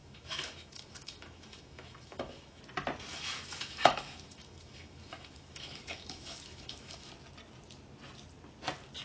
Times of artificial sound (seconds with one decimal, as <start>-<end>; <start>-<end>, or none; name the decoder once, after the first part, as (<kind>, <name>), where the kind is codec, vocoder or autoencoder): 0.0-2.6 (autoencoder, DAC-VAE); 3.1-7.1